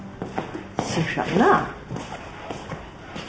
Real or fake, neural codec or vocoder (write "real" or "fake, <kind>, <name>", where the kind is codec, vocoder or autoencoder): real